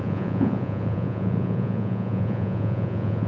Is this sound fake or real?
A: fake